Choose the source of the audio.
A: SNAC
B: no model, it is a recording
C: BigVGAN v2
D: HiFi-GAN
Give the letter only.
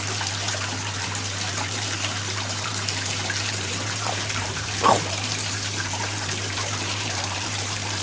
C